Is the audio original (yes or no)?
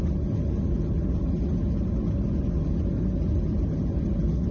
yes